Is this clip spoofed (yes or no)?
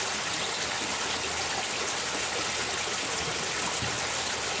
no